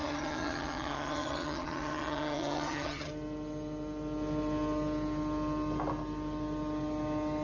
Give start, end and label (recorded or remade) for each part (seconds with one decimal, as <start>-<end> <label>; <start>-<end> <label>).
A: 0.0-3.1 remade; 3.1-7.4 recorded